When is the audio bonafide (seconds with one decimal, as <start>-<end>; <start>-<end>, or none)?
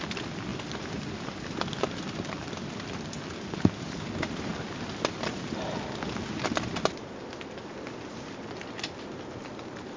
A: 0.0-10.0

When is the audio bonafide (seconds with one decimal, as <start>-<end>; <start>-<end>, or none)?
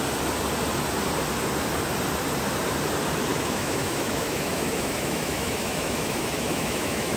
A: 0.0-3.3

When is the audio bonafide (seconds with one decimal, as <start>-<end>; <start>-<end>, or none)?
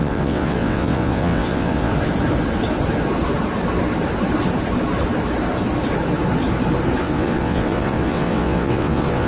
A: 1.9-7.0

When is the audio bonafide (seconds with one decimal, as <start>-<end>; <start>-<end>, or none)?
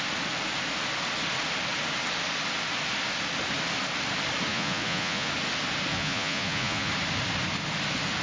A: 0.0-4.5; 5.3-5.9; 6.9-8.2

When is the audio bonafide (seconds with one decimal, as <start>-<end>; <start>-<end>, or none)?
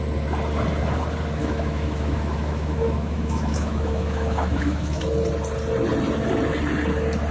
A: 0.0-1.4; 5.0-7.3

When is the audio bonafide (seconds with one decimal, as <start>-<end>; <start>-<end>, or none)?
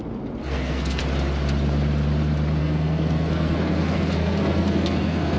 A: 0.0-0.4; 1.0-2.6